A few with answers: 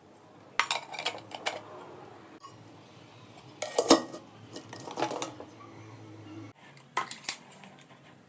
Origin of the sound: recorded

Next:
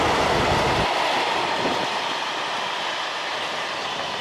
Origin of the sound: recorded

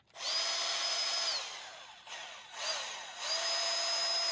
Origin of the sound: recorded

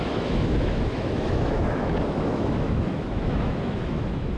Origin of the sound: remade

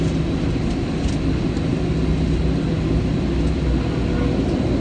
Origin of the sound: recorded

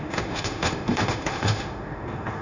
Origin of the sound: remade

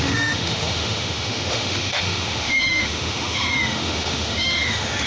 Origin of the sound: remade